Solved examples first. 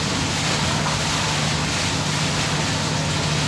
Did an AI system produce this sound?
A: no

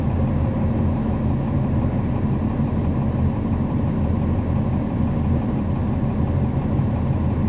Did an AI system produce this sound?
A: no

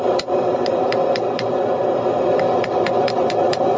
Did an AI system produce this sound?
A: no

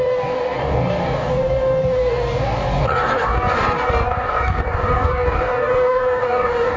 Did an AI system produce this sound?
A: yes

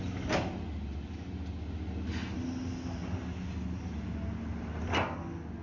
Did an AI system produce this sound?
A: no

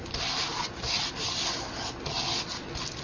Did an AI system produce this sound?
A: no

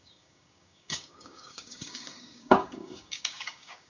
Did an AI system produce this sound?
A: yes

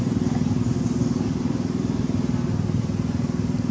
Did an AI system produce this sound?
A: no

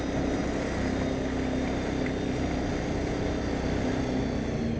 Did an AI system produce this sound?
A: no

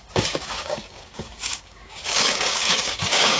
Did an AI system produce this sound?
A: yes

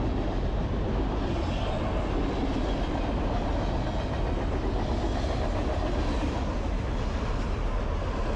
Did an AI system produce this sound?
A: no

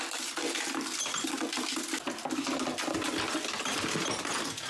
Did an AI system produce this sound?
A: no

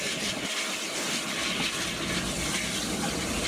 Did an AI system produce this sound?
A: no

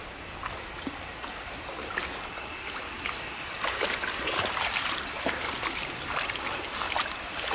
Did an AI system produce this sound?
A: no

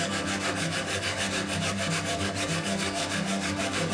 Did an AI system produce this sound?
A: yes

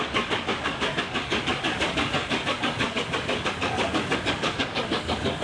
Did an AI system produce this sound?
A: yes